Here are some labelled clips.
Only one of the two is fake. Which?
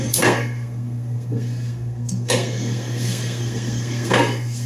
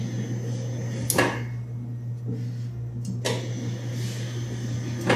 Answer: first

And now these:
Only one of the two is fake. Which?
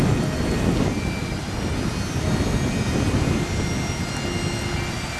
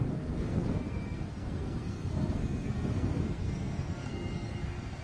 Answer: second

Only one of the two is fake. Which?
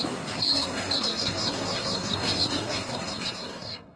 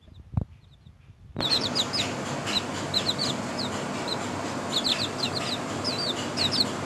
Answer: first